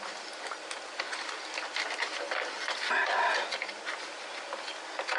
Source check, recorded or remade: recorded